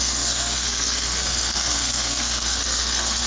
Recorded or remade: remade